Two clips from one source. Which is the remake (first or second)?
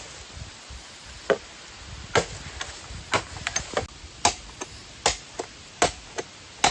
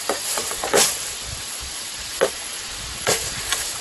second